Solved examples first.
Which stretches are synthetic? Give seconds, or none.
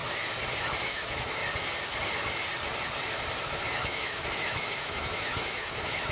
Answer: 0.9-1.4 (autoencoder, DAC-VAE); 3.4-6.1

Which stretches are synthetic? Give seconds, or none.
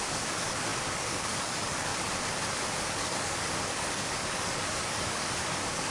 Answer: 0.0-1.9 (codec, DAC); 2.8-5.9